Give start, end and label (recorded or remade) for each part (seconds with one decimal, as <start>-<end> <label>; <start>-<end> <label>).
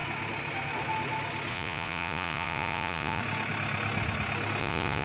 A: 0.0-1.5 recorded; 1.5-3.2 remade; 3.2-4.6 recorded; 4.6-5.0 remade